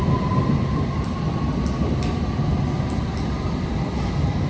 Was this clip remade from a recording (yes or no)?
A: no